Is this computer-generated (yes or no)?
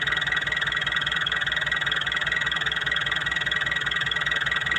no